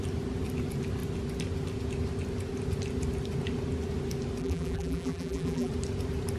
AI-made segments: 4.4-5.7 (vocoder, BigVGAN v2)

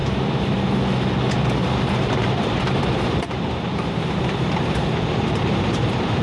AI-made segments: 1.8-6.2 (vocoder, BigVGAN v2)

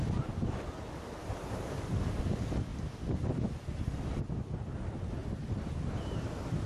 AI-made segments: 1.2-2.2 (vocoder, BigVGAN v2); 2.7-4.2

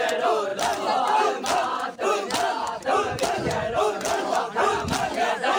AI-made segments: none